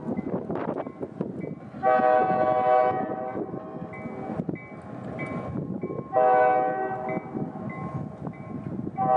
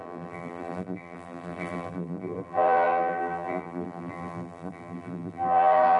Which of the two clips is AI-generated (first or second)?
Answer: second